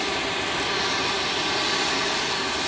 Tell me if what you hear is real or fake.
real